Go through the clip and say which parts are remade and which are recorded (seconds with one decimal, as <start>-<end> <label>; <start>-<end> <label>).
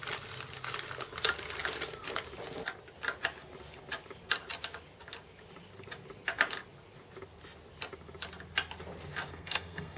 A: 0.0-9.3 recorded; 9.3-10.0 remade